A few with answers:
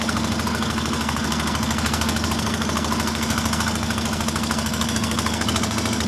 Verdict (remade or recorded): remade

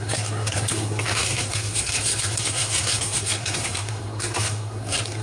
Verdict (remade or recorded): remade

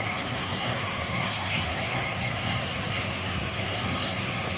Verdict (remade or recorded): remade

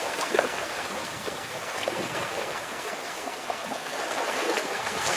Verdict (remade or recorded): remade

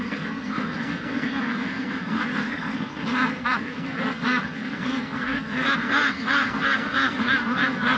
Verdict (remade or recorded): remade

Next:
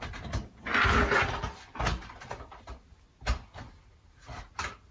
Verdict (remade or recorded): recorded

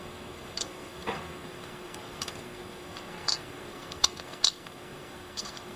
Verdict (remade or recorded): remade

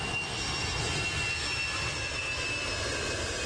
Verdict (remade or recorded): recorded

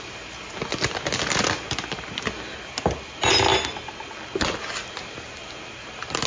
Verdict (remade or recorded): recorded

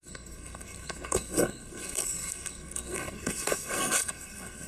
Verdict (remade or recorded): remade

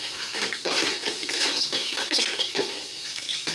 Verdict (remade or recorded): remade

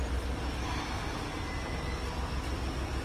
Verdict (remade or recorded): recorded